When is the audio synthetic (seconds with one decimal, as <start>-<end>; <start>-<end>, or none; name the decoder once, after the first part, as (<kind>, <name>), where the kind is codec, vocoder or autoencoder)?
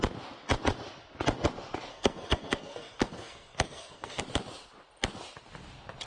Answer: 1.9-4.2 (codec, SNAC)